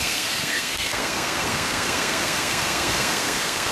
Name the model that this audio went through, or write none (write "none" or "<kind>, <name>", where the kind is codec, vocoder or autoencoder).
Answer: codec, SNAC